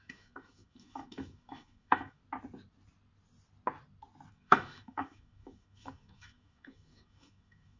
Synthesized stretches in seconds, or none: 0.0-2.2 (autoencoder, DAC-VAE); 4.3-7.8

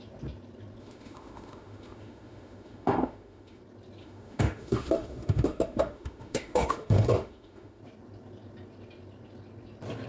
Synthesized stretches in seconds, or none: 0.8-3.6 (autoencoder, DAC-VAE); 4.0-7.8

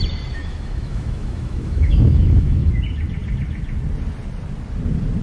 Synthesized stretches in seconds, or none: 0.4-2.7 (autoencoder, DAC-VAE)